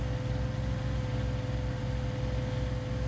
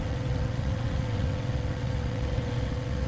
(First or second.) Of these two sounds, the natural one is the first